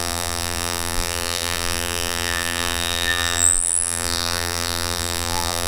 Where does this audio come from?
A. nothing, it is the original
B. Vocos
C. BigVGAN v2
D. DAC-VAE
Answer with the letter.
C